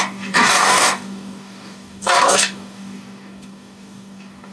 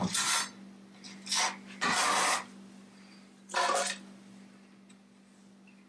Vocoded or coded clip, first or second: first